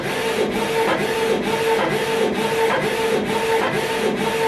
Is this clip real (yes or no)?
yes